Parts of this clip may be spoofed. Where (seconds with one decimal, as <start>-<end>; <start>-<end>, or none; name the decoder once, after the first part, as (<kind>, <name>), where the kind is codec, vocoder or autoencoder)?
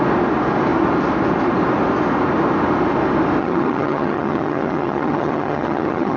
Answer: 3.4-6.2 (vocoder, HiFi-GAN)